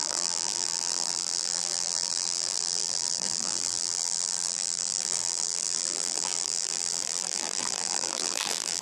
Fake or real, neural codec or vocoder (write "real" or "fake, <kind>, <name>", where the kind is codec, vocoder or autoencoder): fake, vocoder, BigVGAN v2